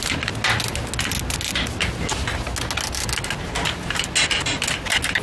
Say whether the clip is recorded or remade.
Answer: recorded